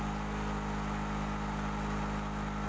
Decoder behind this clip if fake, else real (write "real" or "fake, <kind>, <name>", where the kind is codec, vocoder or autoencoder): real